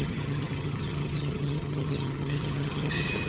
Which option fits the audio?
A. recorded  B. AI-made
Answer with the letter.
B